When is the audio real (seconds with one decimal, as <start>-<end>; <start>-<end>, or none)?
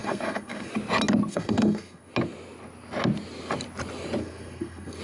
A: 0.7-1.3; 2.1-4.2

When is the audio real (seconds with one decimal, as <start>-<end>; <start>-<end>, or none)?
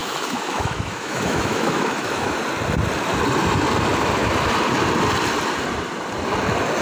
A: 2.4-6.8